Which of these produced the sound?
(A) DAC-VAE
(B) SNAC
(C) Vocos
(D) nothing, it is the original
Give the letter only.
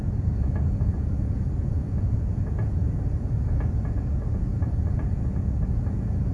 C